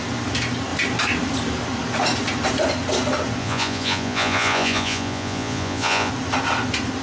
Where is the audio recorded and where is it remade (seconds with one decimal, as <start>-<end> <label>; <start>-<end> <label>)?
0.0-3.4 recorded; 3.4-6.1 remade; 6.1-7.0 recorded